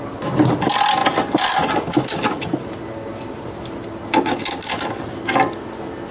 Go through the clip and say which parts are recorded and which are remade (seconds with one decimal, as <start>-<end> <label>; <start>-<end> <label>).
0.0-6.1 recorded